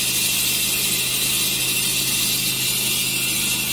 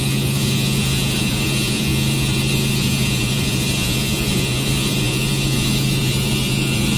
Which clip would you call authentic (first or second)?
first